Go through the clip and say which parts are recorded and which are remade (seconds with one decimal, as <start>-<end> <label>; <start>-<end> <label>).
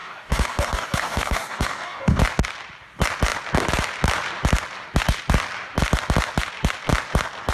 0.0-2.2 remade; 2.2-7.5 recorded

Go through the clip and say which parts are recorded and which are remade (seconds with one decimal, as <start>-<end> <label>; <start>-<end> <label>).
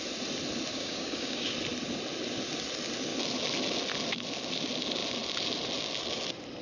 0.0-0.7 recorded; 0.7-1.5 remade; 1.5-6.6 recorded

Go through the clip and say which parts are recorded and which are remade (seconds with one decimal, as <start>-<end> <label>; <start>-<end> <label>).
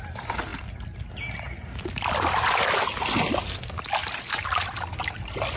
0.0-5.6 recorded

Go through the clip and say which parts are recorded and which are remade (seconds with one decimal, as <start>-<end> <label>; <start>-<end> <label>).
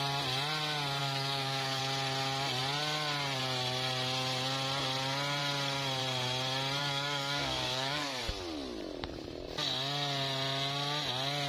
0.0-1.0 recorded; 1.0-1.8 remade; 1.8-6.8 recorded; 6.8-8.2 remade; 8.2-11.5 recorded